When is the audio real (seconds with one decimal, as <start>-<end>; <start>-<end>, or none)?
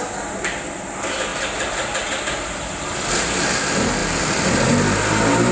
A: 0.0-1.3; 3.1-4.0; 4.7-5.5